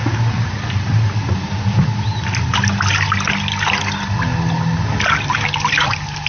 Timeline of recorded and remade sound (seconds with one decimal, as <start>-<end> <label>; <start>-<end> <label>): 0.0-6.3 recorded